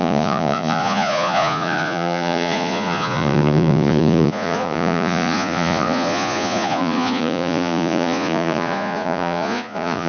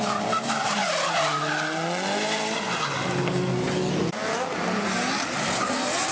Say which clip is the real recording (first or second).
second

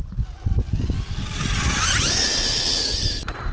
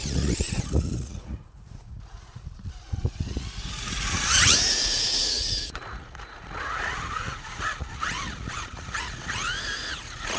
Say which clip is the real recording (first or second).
first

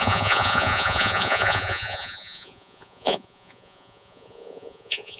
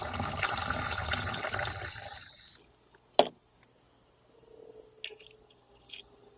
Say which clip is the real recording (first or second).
second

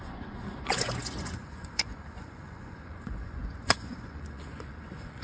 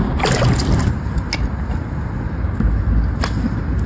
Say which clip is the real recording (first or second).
second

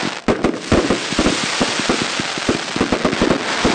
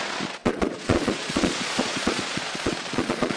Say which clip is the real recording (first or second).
first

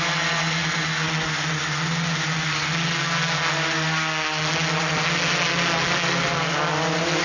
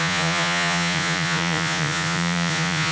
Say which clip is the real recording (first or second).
first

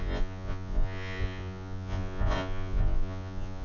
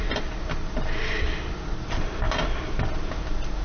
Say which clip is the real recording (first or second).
second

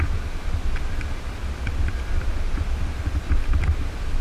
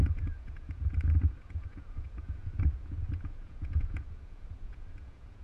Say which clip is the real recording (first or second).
first